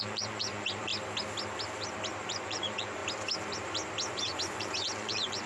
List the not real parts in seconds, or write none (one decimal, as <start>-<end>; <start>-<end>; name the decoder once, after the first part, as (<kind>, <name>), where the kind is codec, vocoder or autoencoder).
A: 0.0-0.9 (vocoder, Vocos); 2.4-3.0; 4.1-5.5